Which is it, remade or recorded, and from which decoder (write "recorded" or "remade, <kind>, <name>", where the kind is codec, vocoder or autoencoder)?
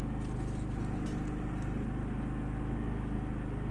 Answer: recorded